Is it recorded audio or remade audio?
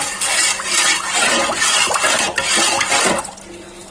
recorded